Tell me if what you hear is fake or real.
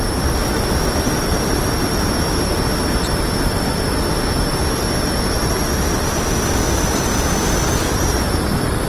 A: real